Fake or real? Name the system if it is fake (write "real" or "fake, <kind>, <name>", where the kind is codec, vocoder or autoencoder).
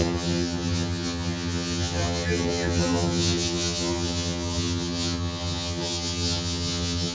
fake, vocoder, HiFi-GAN